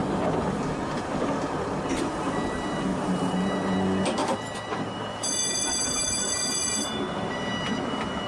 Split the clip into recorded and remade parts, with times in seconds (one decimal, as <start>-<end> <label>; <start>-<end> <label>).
0.0-2.9 recorded; 2.9-3.7 remade; 3.7-4.2 recorded; 4.2-7.5 remade; 7.5-8.3 recorded